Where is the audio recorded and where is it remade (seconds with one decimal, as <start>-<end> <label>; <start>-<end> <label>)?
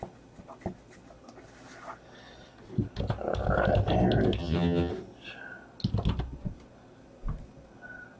0.0-4.4 recorded; 4.4-4.9 remade; 4.9-8.2 recorded